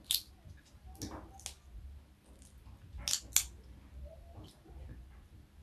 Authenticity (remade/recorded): recorded